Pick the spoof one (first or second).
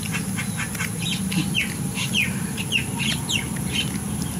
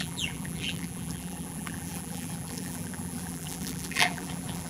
second